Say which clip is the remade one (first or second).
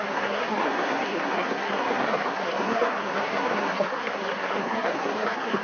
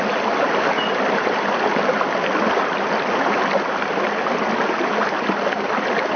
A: first